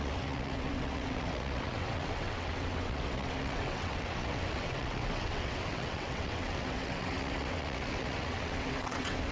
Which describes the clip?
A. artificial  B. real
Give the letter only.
A